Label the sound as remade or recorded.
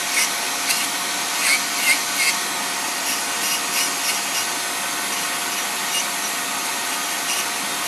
recorded